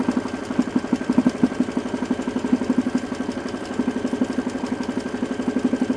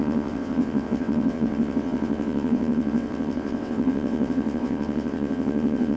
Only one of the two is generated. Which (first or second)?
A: second